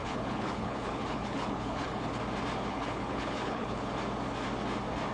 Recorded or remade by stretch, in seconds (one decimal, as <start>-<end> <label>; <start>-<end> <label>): 0.0-2.2 remade; 2.2-2.7 recorded; 2.7-3.9 remade; 3.9-5.1 recorded